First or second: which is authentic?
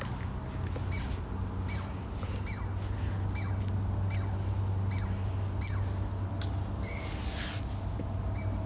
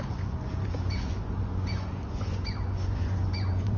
first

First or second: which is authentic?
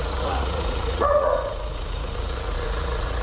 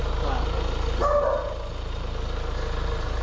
second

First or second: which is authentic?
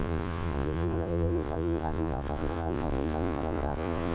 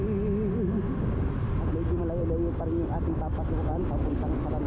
second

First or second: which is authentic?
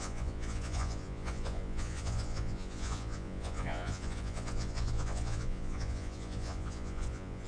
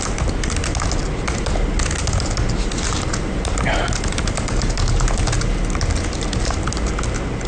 second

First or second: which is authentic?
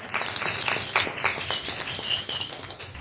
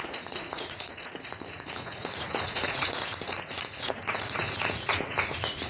first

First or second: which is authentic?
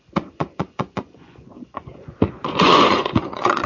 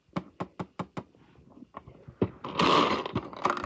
second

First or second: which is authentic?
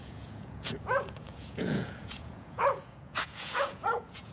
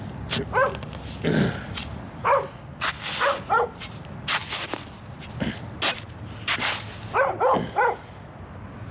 second